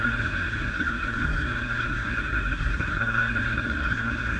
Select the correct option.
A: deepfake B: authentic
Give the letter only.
A